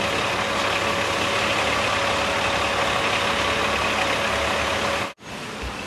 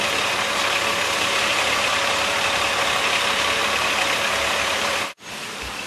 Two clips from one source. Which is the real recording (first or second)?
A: first